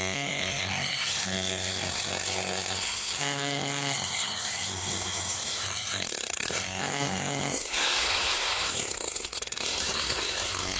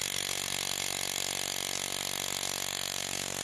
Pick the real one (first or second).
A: second